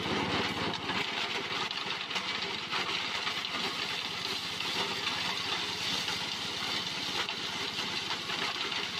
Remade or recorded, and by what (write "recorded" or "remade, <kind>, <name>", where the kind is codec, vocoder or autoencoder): recorded